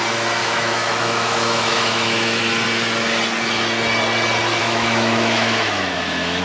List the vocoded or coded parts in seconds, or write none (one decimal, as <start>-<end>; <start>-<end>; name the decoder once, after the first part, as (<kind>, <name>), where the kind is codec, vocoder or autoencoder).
0.4-2.5 (autoencoder, DAC-VAE); 4.6-6.4